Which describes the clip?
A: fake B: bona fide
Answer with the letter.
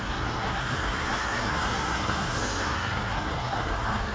A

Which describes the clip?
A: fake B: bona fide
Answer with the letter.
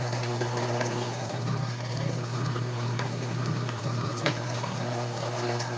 A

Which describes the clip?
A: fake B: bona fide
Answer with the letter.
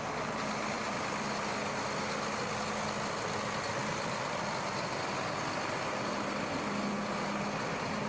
B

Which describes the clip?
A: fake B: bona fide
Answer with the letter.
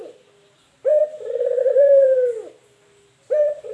A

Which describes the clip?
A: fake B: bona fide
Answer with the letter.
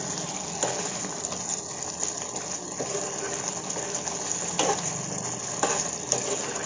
B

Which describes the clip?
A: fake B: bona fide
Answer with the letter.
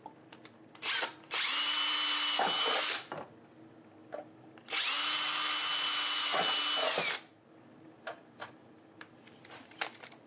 B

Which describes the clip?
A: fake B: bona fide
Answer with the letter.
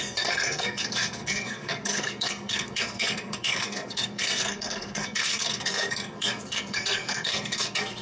A